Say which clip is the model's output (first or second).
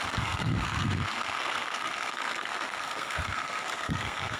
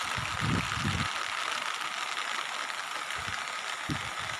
first